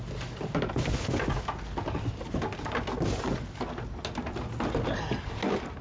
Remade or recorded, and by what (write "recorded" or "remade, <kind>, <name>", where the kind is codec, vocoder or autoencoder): recorded